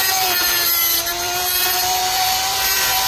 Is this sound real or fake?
fake